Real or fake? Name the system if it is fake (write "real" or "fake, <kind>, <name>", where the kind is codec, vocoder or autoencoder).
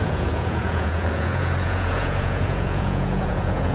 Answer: fake, vocoder, Vocos